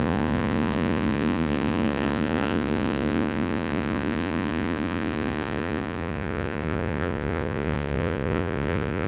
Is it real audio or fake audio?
fake